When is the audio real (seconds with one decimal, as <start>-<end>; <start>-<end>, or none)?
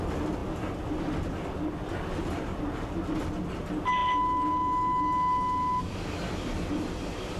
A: 0.0-7.4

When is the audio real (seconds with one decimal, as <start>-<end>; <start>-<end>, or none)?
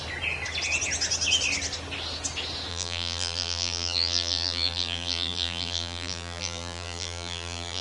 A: 0.0-2.7